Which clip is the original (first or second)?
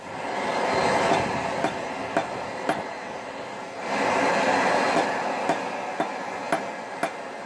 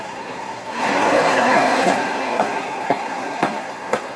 first